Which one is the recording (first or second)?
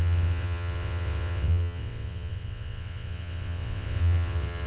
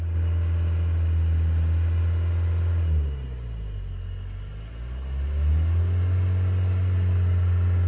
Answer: second